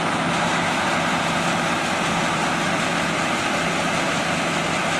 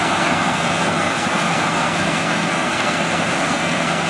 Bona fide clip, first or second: first